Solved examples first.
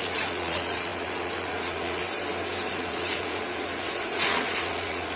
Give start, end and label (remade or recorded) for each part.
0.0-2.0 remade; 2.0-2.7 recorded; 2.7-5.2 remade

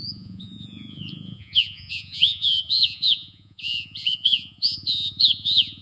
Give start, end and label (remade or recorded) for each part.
0.0-5.8 remade

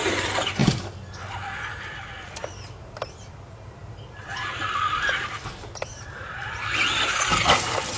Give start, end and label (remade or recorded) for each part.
0.0-8.0 recorded

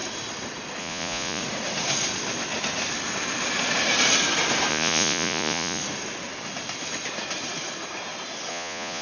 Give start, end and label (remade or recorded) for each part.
0.0-0.8 recorded; 0.8-1.4 remade; 1.4-4.7 recorded; 4.7-5.8 remade; 5.8-8.5 recorded; 8.5-9.0 remade

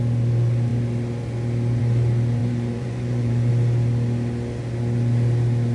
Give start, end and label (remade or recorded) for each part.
0.0-2.4 recorded; 2.4-3.5 remade; 3.5-5.7 recorded

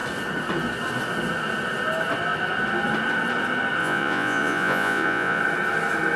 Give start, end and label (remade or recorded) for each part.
0.0-3.8 recorded; 3.8-5.4 remade; 5.4-6.2 recorded

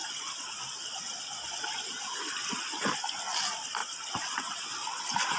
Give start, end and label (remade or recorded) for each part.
0.0-5.4 recorded